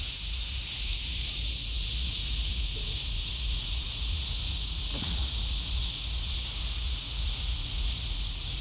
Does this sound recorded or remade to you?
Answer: remade